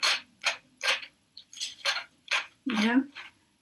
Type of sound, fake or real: fake